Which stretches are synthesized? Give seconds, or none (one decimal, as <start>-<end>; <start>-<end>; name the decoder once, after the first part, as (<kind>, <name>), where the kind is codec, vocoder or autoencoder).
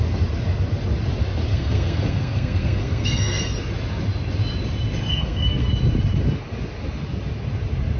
1.5-3.4 (codec, SNAC); 5.1-5.7